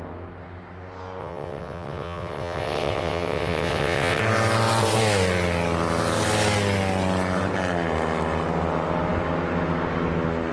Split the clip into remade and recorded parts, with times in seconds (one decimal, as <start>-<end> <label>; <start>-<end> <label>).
0.0-1.2 recorded; 1.2-4.2 remade; 4.2-10.5 recorded